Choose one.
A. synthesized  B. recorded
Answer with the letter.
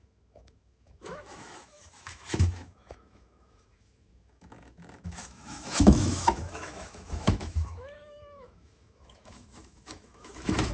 A